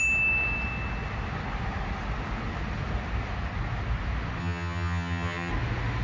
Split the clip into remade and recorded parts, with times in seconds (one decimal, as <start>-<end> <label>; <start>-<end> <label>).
0.0-4.4 recorded; 4.4-5.5 remade; 5.5-6.0 recorded